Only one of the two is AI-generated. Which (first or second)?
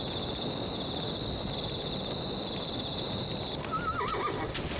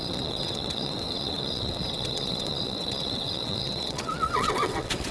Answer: second